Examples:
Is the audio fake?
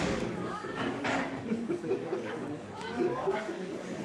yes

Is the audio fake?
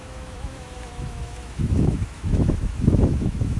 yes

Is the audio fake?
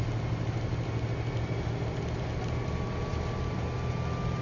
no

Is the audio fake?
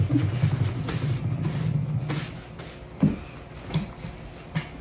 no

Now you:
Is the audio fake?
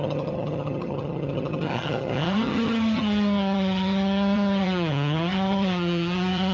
yes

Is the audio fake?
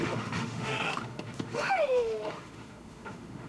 yes